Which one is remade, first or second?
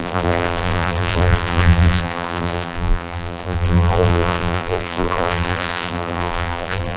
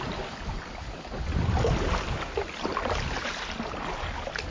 first